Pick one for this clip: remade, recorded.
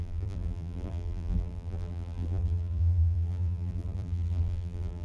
remade